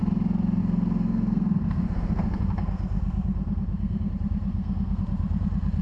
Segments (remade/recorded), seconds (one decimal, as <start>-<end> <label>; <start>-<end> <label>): 0.0-0.6 recorded; 0.6-4.1 remade; 4.1-4.5 recorded; 4.5-5.0 remade; 5.0-5.8 recorded